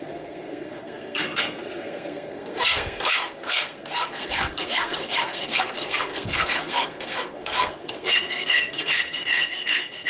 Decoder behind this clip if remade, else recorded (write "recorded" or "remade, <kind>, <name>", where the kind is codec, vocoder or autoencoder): remade, codec, SNAC